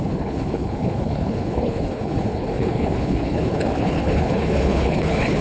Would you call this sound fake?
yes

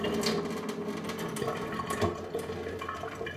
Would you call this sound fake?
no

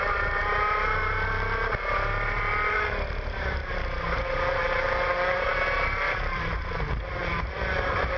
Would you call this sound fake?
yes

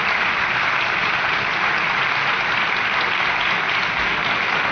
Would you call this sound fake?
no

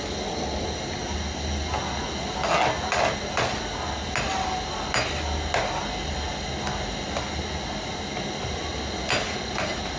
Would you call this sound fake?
no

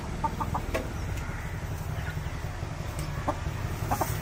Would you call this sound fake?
no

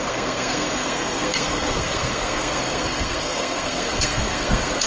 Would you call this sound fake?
yes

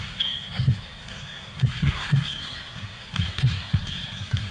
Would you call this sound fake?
yes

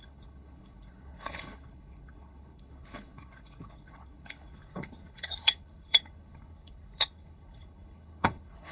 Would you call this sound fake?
yes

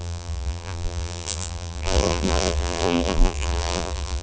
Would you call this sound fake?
yes